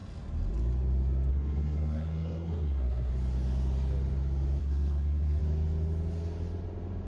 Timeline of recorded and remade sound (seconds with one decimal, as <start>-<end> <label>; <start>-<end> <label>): 0.0-1.3 recorded; 1.3-3.1 remade; 3.1-4.6 recorded; 4.6-5.4 remade; 5.4-7.1 recorded